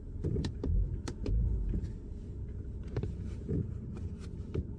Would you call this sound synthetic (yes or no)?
no